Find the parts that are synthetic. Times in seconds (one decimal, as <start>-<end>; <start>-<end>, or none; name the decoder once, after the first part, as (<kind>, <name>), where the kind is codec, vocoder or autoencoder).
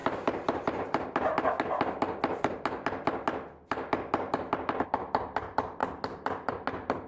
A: 0.0-0.6 (vocoder, BigVGAN v2)